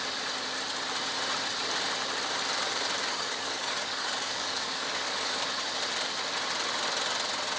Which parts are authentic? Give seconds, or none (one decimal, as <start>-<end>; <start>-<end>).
0.0-3.1; 5.3-7.6